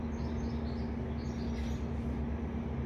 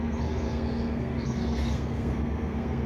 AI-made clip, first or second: second